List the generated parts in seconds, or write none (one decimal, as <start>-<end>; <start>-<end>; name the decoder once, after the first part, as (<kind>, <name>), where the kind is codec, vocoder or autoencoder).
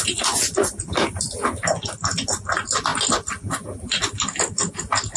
none